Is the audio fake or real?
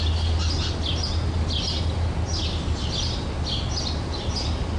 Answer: real